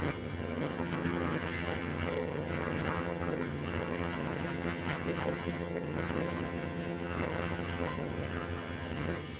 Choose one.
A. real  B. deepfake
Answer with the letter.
B